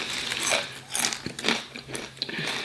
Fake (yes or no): no